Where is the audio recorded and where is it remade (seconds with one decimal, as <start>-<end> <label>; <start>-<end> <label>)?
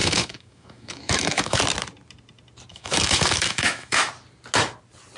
0.0-1.6 remade; 1.6-2.7 recorded; 2.7-4.1 remade; 4.1-5.2 recorded